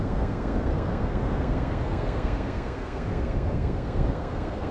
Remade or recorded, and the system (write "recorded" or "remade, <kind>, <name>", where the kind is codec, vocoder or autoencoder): remade, codec, SNAC